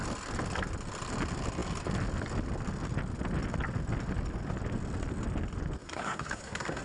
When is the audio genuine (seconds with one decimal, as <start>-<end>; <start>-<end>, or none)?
0.0-5.8